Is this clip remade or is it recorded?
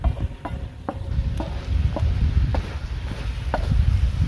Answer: recorded